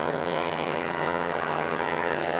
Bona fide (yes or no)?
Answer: no